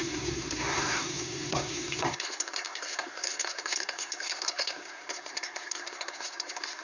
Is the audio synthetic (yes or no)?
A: yes